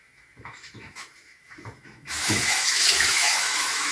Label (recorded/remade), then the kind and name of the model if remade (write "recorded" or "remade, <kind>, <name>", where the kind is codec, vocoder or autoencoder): remade, autoencoder, DAC-VAE